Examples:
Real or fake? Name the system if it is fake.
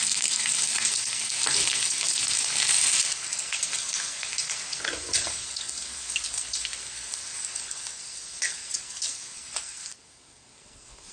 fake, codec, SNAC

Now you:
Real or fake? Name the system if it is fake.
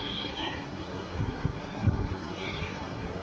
fake, codec, SNAC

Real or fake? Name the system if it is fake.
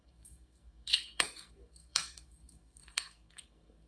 fake, codec, SNAC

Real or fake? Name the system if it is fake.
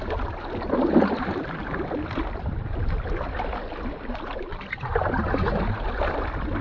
real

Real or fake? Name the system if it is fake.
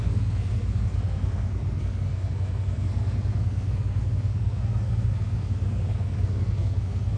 fake, codec, SNAC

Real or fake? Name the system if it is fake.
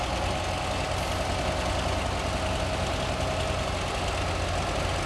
real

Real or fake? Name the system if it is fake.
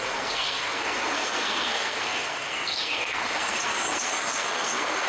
fake, codec, SNAC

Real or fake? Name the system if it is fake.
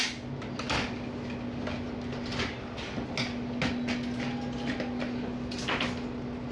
real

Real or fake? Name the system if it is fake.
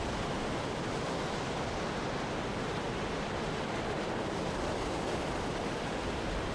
real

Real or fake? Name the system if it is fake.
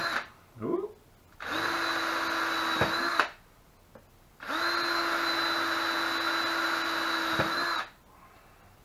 real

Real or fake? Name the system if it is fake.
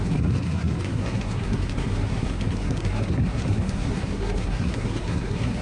fake, codec, SNAC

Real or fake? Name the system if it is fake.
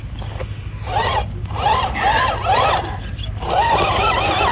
real